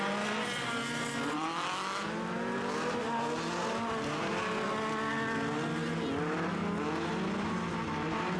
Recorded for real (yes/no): yes